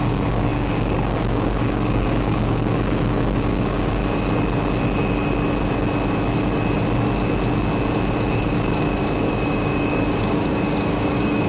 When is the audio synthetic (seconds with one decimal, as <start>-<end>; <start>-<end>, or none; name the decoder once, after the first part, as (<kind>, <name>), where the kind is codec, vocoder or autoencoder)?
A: 0.0-4.0 (codec, DAC); 8.3-11.5